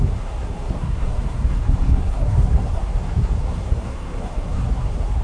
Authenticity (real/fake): fake